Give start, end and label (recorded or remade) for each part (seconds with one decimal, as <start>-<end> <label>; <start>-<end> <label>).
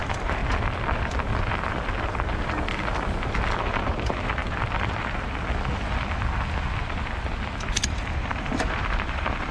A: 0.0-0.4 remade; 0.4-3.6 recorded; 3.6-4.4 remade; 4.4-7.7 recorded; 7.7-9.5 remade